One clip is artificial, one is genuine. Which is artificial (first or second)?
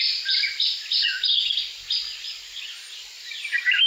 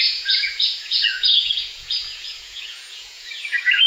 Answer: second